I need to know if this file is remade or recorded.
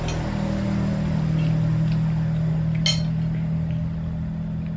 recorded